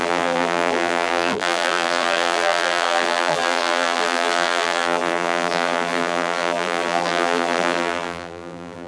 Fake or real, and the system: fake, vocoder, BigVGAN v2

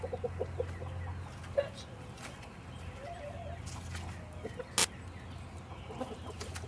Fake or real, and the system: real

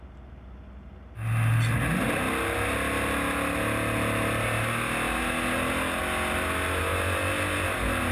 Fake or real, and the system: real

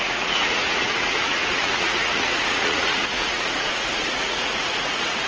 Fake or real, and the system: fake, vocoder, Vocos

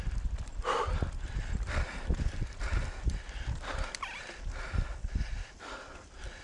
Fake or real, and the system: real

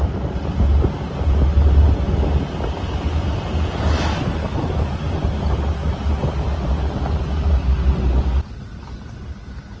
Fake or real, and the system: real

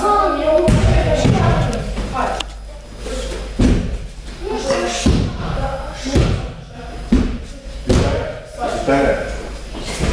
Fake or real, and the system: real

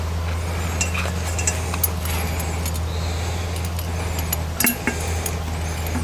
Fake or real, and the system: real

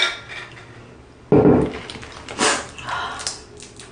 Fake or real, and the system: real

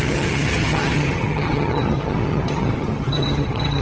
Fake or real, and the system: fake, vocoder, HiFi-GAN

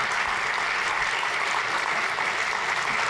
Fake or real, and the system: real